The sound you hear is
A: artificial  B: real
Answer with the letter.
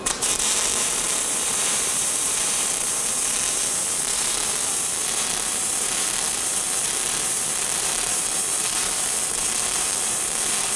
A